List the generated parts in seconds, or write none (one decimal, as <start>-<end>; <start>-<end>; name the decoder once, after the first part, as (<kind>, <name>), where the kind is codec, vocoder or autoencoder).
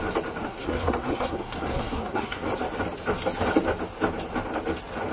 0.4-2.4 (codec, SNAC)